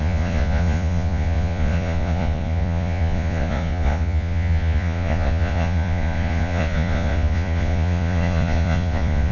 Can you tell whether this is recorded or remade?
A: remade